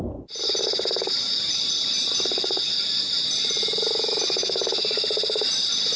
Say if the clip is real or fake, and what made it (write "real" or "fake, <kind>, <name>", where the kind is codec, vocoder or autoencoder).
real